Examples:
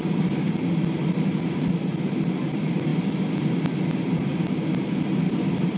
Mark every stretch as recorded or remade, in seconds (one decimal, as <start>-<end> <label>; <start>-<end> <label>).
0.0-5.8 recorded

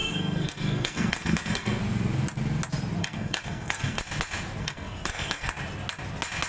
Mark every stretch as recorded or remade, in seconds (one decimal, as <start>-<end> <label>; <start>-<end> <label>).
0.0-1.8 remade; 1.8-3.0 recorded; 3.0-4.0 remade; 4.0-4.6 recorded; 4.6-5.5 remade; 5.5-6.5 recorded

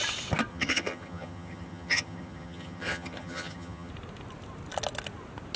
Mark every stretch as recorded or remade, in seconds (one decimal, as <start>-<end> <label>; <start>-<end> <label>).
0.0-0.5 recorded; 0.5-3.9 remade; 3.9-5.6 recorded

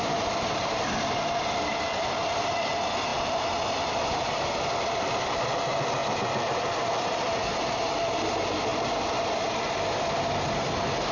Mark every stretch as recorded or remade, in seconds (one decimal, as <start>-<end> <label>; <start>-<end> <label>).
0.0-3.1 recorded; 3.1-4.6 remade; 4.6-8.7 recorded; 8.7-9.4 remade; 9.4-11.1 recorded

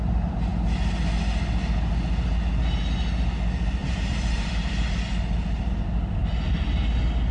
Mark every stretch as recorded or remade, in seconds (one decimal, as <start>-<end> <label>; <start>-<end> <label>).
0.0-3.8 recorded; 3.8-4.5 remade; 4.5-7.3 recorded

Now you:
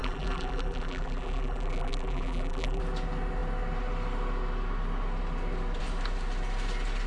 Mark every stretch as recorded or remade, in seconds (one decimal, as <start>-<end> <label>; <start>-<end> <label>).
0.0-2.8 remade; 2.8-7.1 recorded